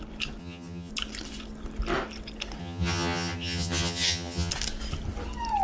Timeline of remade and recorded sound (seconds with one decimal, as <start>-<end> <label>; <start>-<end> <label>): 0.0-0.4 recorded; 0.4-0.9 remade; 0.9-2.6 recorded; 2.6-4.5 remade; 4.5-5.6 recorded